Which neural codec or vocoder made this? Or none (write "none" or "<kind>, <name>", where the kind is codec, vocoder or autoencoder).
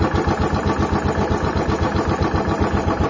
none